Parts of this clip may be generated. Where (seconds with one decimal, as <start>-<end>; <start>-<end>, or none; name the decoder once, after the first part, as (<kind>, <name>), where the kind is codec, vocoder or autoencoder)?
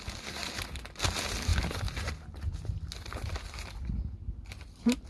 none